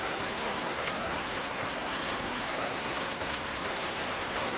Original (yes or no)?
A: no